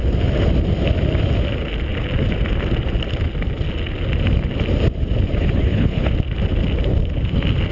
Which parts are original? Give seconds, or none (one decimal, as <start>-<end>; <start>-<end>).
0.0-5.4; 6.1-7.7